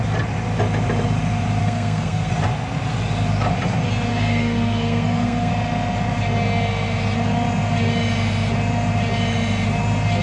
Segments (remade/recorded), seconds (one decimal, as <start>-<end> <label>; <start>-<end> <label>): 0.0-1.6 recorded; 1.6-2.3 remade; 2.3-4.1 recorded; 4.1-5.5 remade; 5.5-10.2 recorded